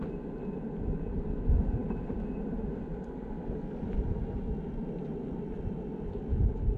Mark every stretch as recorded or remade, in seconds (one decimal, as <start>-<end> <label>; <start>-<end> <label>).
0.0-6.8 recorded